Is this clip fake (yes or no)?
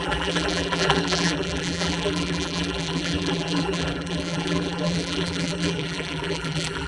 yes